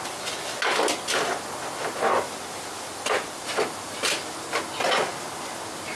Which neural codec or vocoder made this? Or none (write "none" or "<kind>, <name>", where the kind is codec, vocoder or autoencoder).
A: none